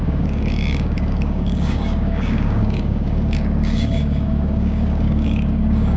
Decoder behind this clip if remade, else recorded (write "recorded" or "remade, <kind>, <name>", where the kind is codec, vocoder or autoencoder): remade, codec, DAC